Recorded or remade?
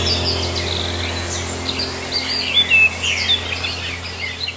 recorded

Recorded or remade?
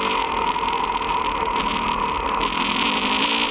recorded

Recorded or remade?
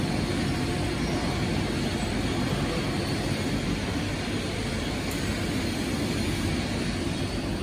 recorded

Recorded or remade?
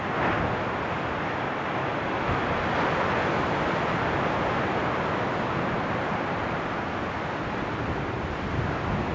recorded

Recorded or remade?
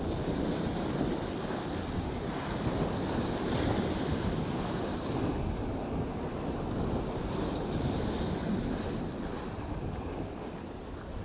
recorded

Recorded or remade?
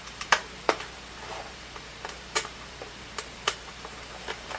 remade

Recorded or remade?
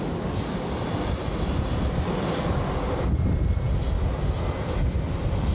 recorded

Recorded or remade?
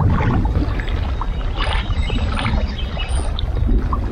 recorded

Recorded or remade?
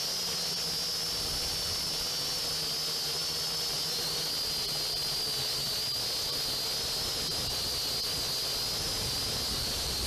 recorded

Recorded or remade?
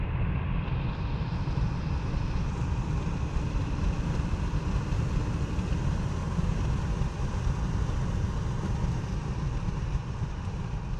remade